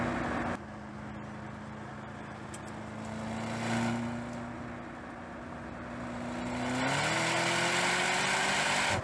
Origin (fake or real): real